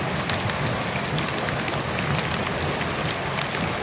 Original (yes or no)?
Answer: yes